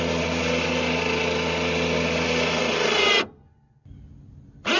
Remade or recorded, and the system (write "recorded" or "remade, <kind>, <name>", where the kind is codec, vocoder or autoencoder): recorded